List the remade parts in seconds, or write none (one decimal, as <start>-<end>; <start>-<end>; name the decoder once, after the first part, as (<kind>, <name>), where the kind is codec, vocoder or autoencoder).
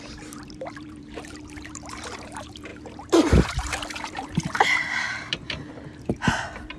0.0-6.8 (vocoder, BigVGAN v2)